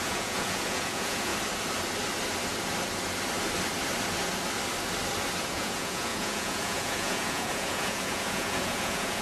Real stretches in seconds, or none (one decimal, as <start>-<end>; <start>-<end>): 1.3-5.4